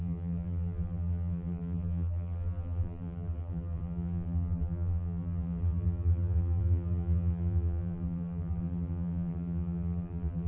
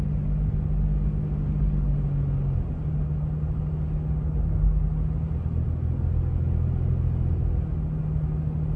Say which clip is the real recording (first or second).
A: second